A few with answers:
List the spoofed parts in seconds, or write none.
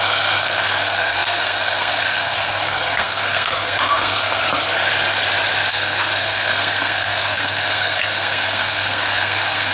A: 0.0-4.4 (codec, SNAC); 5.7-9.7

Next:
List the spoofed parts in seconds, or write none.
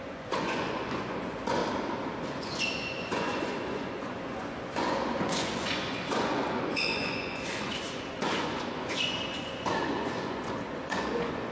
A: 0.0-1.6 (vocoder, Vocos); 2.2-11.5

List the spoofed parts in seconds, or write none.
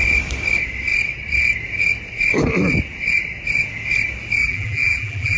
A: 4.4-5.4 (vocoder, BigVGAN v2)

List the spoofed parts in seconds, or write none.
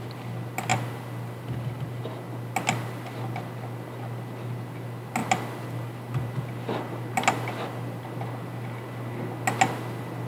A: none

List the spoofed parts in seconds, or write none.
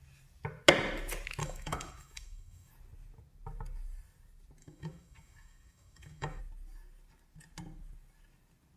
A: 1.4-2.7 (autoencoder, DAC-VAE); 4.6-6.4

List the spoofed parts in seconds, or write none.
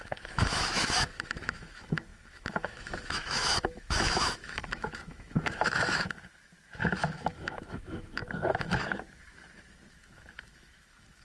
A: 0.0-11.2 (autoencoder, DAC-VAE)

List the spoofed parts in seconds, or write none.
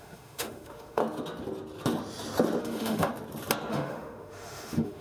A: 0.0-1.0 (autoencoder, DAC-VAE); 2.6-3.1; 3.7-5.0